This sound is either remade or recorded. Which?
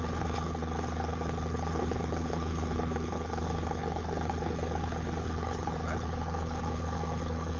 remade